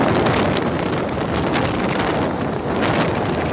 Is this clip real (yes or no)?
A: yes